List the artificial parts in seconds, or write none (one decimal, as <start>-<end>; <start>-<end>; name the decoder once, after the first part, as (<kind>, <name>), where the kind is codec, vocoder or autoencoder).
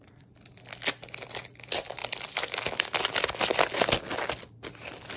none